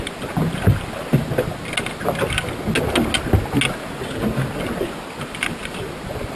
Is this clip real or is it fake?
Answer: real